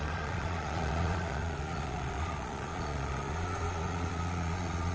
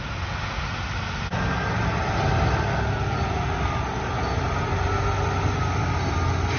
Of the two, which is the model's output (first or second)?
first